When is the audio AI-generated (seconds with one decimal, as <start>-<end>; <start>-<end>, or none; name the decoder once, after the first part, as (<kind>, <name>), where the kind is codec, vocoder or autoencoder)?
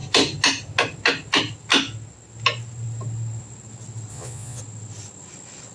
4.1-4.6 (vocoder, Vocos)